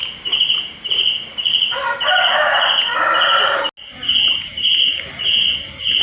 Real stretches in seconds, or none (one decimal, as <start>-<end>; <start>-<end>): 3.6-6.0